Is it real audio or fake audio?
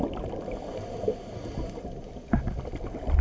real